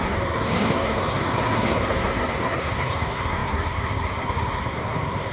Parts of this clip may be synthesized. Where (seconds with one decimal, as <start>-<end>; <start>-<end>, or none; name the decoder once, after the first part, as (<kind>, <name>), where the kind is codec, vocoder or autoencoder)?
0.0-5.3 (codec, SNAC)